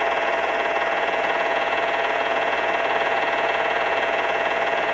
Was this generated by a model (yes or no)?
yes